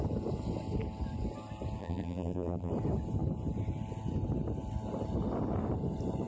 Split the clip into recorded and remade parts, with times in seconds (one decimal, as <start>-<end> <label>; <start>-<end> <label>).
0.0-1.8 recorded; 1.8-2.7 remade; 2.7-6.3 recorded